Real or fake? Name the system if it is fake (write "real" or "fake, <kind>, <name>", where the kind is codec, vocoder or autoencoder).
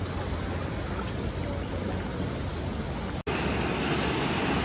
real